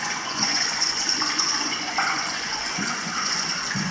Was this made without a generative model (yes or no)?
no